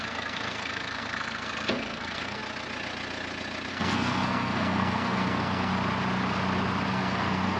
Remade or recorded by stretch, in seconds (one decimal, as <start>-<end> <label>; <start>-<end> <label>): 0.0-2.4 remade; 2.4-3.7 recorded; 3.7-5.7 remade; 5.7-6.9 recorded; 6.9-7.6 remade